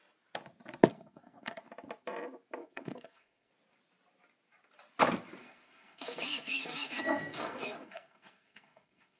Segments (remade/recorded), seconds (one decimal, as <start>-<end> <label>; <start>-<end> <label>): 0.0-0.9 recorded; 0.9-1.6 remade; 1.6-2.6 recorded; 2.6-3.5 remade; 3.5-5.4 recorded; 5.4-9.2 remade